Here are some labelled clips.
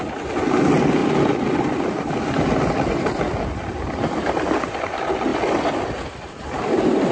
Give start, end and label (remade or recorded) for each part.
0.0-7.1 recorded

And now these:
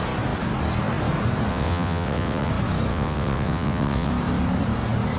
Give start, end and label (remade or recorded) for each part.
0.0-1.5 recorded; 1.5-2.5 remade; 2.5-2.9 recorded; 2.9-4.1 remade; 4.1-5.2 recorded

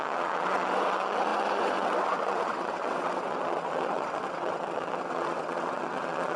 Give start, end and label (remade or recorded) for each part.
0.0-6.4 remade

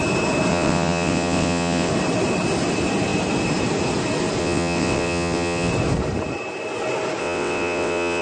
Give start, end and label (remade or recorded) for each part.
0.0-0.5 recorded; 0.5-1.9 remade; 1.9-4.4 recorded; 4.4-5.7 remade; 5.7-7.2 recorded; 7.2-8.2 remade

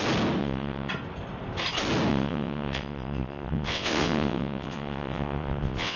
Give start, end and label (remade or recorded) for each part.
0.0-0.4 recorded; 0.4-0.9 remade; 0.9-2.1 recorded; 2.1-6.0 remade

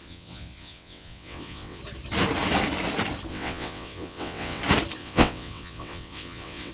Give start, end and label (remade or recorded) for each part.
0.0-1.8 remade; 1.8-3.3 recorded; 3.3-4.6 remade; 4.6-5.0 recorded; 5.0-6.7 remade